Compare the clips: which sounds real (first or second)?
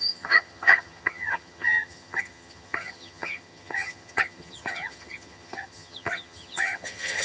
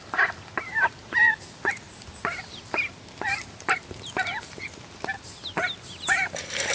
second